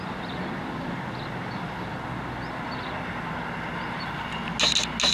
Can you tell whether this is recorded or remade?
recorded